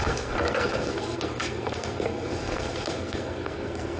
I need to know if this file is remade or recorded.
remade